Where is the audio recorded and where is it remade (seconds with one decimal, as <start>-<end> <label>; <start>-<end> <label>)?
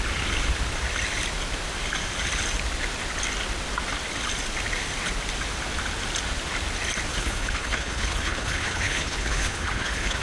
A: 0.0-7.1 recorded; 7.1-10.2 remade